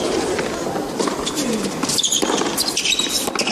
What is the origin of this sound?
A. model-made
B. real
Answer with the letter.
B